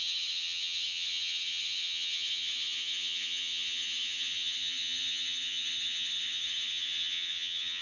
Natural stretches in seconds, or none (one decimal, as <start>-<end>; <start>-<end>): none